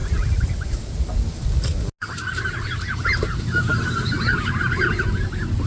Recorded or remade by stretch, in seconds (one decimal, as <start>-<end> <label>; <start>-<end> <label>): 0.0-5.7 recorded